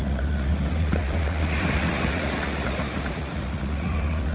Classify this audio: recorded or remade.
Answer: remade